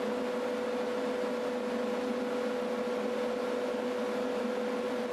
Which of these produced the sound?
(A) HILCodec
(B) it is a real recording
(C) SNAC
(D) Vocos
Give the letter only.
B